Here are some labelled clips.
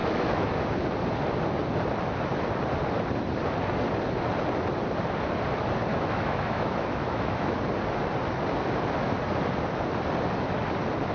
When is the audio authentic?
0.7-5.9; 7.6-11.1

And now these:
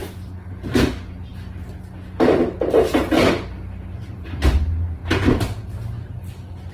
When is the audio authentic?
0.0-6.7

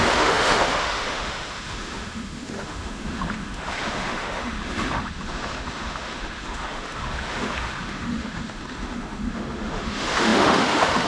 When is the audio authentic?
none

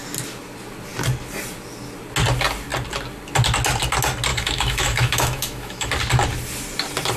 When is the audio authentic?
0.0-4.3; 5.9-7.2